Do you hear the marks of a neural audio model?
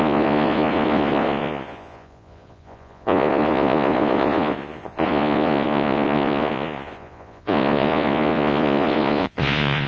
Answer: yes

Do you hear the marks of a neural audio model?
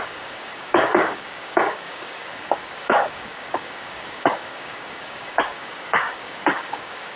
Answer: yes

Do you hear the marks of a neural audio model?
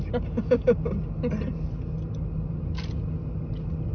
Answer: no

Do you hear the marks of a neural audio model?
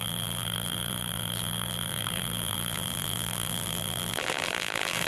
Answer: yes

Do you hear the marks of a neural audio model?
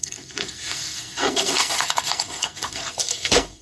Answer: yes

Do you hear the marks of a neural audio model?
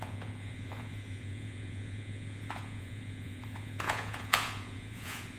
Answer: yes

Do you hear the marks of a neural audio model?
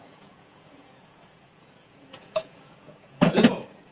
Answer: yes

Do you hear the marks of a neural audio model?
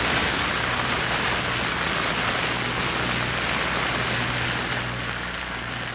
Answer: no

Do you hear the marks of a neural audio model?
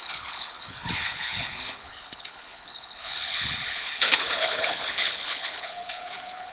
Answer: yes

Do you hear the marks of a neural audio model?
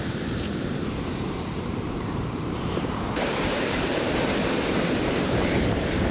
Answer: yes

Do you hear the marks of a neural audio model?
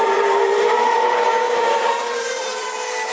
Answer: yes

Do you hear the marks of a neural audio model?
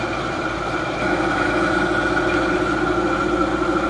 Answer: no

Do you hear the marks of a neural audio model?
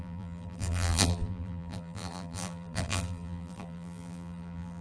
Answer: yes